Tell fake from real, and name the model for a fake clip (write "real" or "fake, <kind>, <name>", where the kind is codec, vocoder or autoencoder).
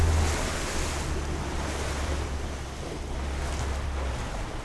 real